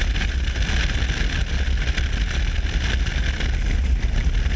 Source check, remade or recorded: recorded